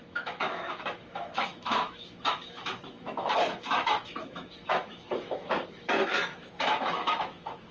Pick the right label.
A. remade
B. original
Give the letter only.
A